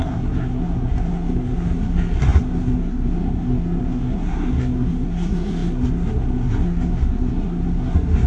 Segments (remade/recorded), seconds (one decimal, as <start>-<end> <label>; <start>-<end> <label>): 0.0-8.3 remade